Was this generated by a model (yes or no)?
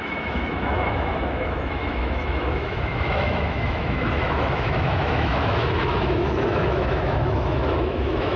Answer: yes